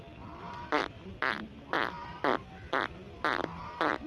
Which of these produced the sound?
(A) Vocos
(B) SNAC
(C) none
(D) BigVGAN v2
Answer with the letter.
C